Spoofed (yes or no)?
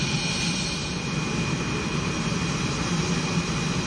no